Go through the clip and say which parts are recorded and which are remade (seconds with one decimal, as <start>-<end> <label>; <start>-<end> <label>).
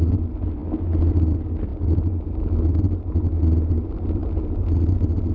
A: 0.0-5.3 recorded